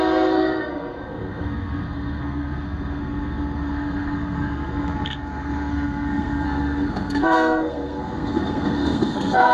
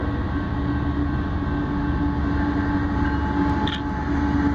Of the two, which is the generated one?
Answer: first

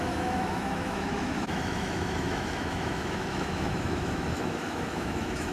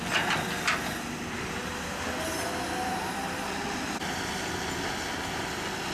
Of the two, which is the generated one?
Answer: first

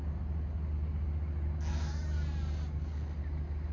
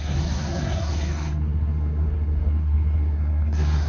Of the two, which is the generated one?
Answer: second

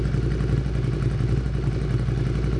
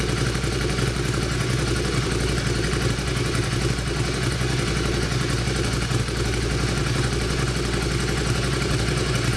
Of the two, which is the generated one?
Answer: second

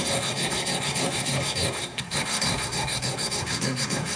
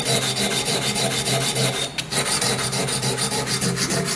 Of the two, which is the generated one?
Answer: first